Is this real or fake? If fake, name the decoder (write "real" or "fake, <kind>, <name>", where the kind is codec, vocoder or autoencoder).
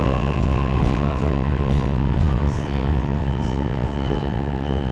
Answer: fake, vocoder, WaveNeXt